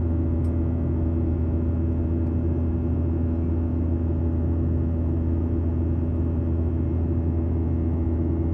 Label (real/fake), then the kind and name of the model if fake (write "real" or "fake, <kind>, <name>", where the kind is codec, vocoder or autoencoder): real